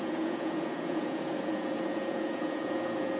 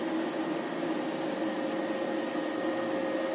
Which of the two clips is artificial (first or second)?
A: first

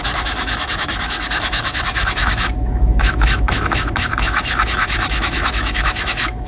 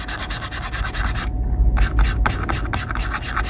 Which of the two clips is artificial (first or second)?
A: first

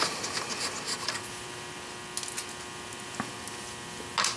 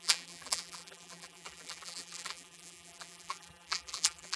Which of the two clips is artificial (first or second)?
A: second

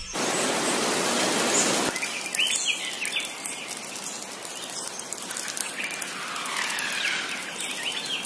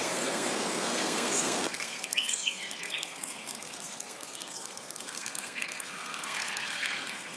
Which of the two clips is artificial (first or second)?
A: second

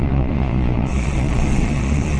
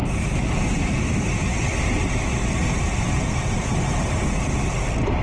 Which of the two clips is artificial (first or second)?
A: first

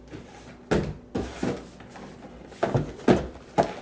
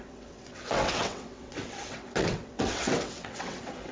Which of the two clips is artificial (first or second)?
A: second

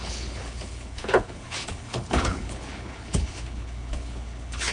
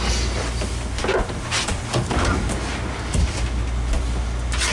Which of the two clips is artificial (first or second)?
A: first